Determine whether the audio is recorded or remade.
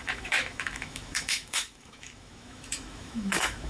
remade